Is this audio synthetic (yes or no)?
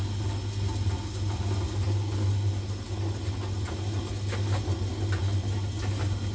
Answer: no